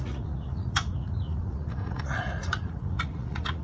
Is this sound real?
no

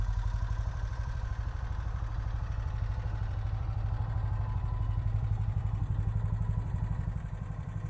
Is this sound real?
no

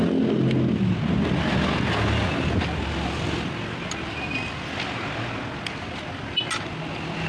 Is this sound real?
yes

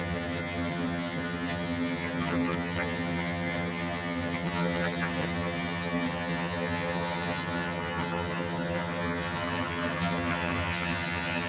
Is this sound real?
no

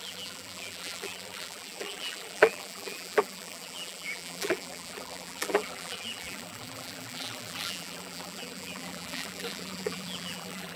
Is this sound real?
no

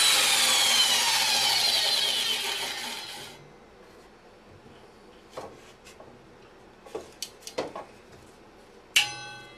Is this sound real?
yes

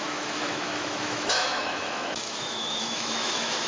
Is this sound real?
no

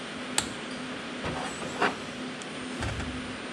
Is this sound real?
yes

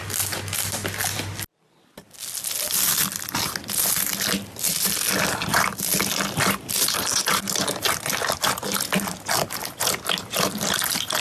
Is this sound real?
yes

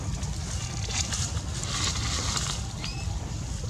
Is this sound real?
yes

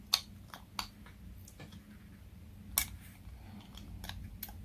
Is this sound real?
yes